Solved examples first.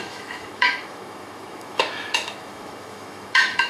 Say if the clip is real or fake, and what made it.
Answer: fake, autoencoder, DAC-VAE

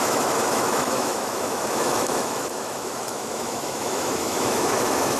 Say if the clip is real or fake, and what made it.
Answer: fake, autoencoder, DAC-VAE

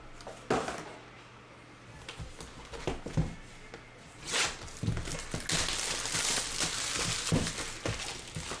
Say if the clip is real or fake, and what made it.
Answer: real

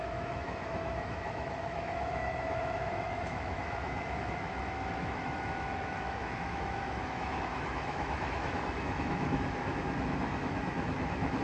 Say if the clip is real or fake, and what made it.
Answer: fake, autoencoder, DAC-VAE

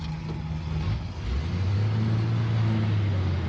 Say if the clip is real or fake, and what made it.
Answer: real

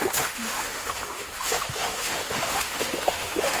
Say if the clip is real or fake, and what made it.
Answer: fake, autoencoder, DAC-VAE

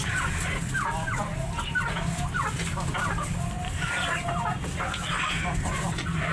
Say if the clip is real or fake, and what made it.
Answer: real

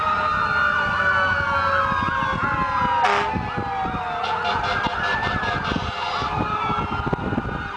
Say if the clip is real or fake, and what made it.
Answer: real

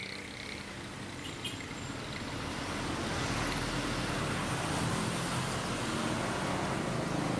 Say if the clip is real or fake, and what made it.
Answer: real